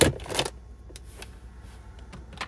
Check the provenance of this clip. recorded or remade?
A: recorded